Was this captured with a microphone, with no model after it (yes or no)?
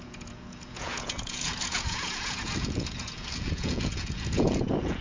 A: no